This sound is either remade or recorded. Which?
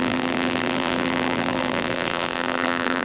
remade